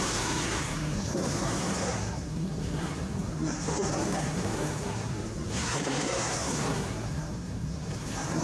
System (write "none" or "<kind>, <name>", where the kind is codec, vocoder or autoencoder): codec, SNAC